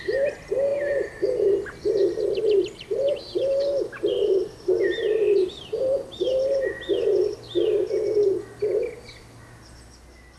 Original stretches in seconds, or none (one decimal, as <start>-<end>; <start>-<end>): 0.0-10.4